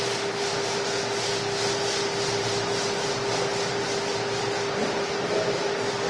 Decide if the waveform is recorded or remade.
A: recorded